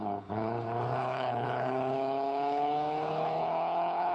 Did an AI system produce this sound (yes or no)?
yes